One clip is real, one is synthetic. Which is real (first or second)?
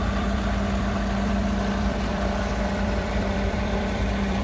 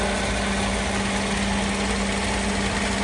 second